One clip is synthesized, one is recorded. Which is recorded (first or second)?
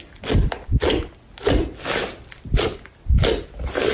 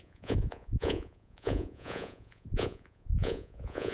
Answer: first